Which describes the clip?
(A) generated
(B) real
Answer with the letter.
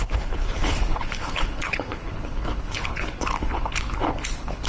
A